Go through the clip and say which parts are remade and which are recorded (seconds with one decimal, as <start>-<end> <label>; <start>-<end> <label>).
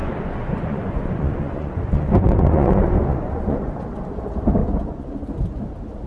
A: 0.0-3.7 remade; 3.7-4.6 recorded; 4.6-5.3 remade; 5.3-6.1 recorded